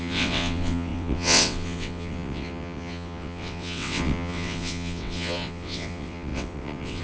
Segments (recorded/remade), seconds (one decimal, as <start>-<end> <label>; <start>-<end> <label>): 0.0-7.0 remade